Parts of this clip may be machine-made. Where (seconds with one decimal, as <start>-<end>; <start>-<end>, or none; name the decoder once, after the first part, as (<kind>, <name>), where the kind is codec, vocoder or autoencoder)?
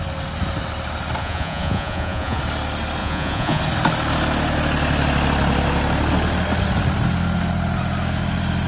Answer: 1.2-2.4 (vocoder, Vocos); 3.0-3.6